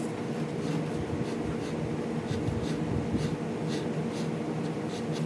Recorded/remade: recorded